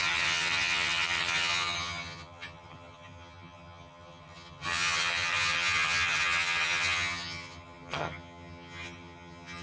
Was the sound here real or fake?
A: fake